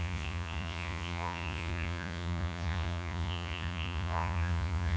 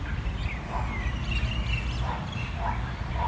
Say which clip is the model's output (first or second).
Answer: first